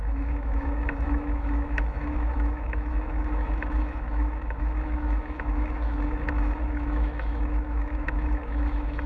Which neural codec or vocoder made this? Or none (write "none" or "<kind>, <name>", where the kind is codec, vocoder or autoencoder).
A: autoencoder, DAC-VAE